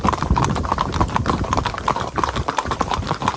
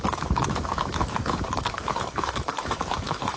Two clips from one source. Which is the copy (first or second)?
second